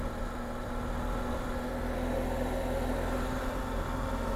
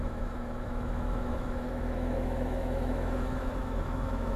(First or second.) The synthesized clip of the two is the second